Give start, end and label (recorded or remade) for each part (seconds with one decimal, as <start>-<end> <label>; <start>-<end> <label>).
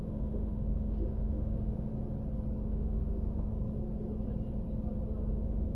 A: 0.0-1.9 remade; 1.9-2.6 recorded; 2.6-3.5 remade; 3.5-5.3 recorded; 5.3-5.8 remade